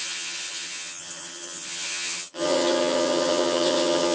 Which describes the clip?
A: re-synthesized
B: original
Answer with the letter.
A